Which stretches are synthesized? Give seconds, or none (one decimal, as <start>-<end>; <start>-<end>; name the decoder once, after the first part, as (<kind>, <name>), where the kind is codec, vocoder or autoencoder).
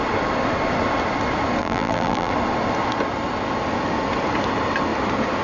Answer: 1.6-2.3 (vocoder, BigVGAN v2)